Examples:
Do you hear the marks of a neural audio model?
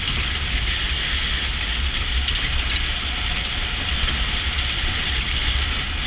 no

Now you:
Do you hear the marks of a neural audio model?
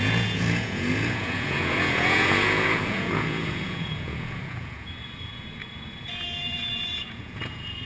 yes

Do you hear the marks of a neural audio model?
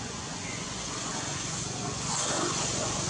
yes